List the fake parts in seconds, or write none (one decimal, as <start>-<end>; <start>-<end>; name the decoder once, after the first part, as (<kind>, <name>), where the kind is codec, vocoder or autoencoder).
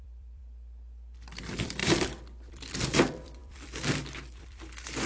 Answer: 0.0-0.4 (vocoder, BigVGAN v2); 1.4-5.1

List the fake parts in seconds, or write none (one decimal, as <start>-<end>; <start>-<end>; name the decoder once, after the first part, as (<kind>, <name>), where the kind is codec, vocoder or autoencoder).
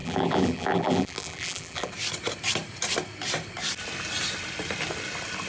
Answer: 0.0-1.9 (vocoder, BigVGAN v2)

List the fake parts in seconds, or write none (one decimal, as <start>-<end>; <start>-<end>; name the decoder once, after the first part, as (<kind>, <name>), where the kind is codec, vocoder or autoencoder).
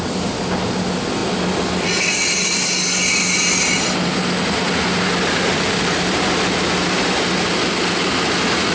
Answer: none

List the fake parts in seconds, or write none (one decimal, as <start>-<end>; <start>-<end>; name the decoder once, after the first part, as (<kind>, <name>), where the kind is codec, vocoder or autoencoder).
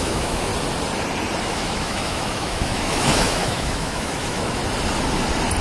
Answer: 0.0-0.5 (autoencoder, DAC-VAE); 1.4-4.6